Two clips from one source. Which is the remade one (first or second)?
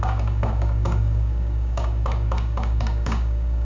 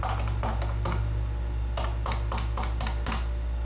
first